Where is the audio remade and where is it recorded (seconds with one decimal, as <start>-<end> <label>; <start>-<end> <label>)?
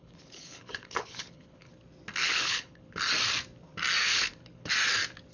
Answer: 0.0-1.7 remade; 1.7-2.2 recorded; 2.2-3.0 remade; 3.0-4.0 recorded; 4.0-4.7 remade; 4.7-5.3 recorded